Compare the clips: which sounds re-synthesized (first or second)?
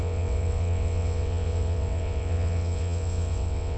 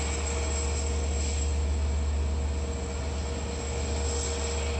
first